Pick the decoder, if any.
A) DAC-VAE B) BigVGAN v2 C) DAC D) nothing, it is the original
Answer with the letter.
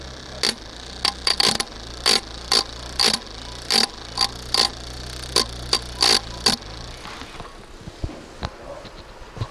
D